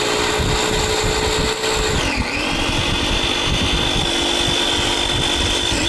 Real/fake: real